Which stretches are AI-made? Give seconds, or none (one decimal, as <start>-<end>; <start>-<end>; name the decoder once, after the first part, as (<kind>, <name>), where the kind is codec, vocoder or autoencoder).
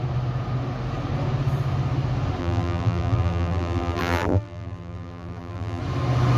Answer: 2.4-5.8 (vocoder, BigVGAN v2)